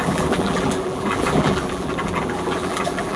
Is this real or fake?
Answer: fake